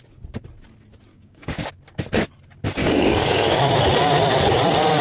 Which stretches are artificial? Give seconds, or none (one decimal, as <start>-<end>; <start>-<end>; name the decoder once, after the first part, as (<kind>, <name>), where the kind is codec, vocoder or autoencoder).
1.1-1.7 (codec, DAC); 2.8-3.6